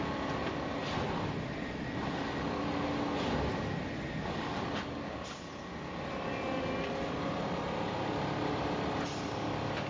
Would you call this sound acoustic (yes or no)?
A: yes